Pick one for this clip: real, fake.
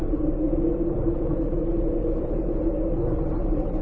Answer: fake